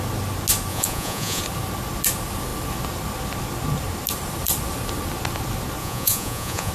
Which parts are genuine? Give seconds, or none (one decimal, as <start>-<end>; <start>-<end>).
0.0-0.7; 1.4-5.8